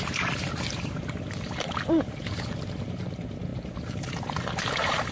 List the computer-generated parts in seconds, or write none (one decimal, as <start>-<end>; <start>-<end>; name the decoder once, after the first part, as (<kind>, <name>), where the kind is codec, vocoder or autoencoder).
0.0-5.1 (vocoder, BigVGAN v2)